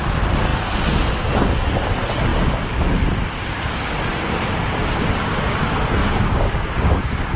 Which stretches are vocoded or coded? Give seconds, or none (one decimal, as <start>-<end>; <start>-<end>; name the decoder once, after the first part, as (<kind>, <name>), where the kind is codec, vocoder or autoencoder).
6.0-7.4 (codec, DAC)